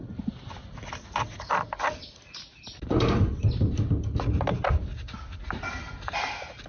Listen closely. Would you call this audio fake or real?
real